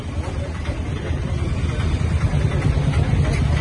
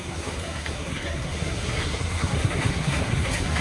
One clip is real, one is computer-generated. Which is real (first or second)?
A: first